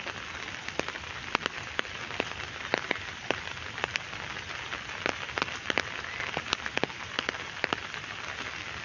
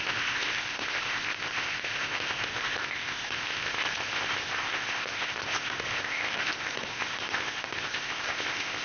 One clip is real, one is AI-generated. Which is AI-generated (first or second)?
second